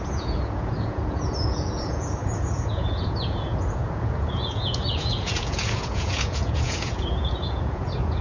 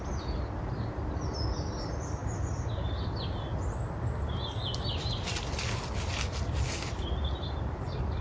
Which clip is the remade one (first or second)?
first